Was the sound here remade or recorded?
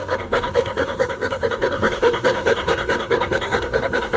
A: remade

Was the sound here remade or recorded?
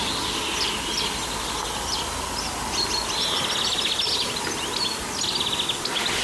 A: recorded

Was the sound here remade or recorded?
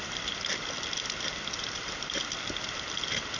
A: recorded